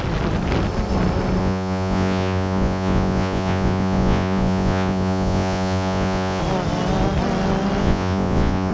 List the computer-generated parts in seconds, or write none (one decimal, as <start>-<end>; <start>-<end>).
1.4-6.4; 7.8-8.7